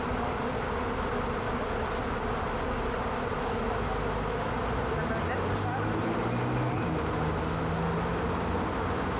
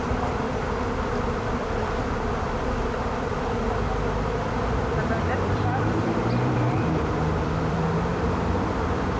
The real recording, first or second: first